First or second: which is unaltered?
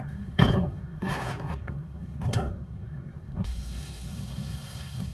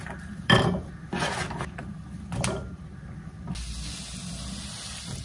second